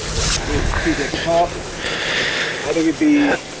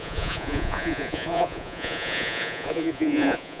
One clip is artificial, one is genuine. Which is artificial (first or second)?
second